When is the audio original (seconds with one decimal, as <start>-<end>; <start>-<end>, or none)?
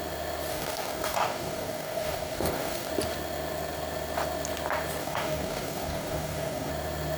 0.0-0.5; 2.9-5.0; 6.7-7.2